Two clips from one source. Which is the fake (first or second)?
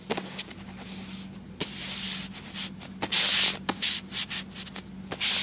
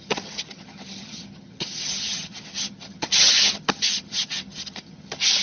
second